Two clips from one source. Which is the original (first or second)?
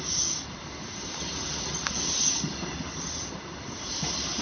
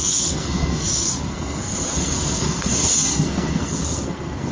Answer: first